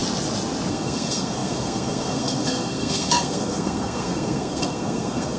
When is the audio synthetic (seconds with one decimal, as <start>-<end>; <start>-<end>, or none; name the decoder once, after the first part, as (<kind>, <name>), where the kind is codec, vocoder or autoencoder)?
0.7-5.4 (codec, SNAC)